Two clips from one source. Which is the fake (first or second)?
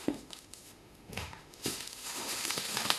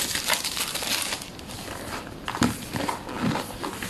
first